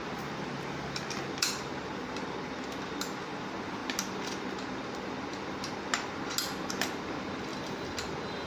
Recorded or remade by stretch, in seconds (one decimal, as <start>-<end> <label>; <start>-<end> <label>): 0.0-8.5 recorded